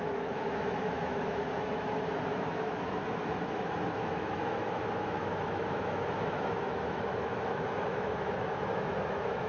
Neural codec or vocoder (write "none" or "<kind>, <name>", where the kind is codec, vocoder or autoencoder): autoencoder, DAC-VAE